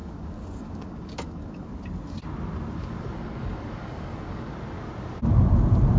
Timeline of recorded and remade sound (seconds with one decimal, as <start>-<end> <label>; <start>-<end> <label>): 0.0-1.7 remade; 1.7-2.8 recorded; 2.8-4.5 remade; 4.5-6.0 recorded